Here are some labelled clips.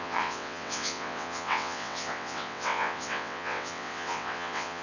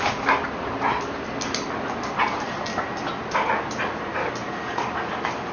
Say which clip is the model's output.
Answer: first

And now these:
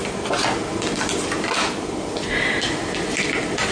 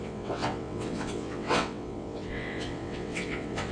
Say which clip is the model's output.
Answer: second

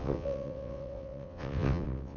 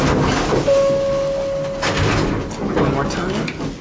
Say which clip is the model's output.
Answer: first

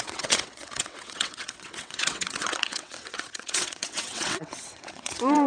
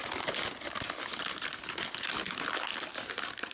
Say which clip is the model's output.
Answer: first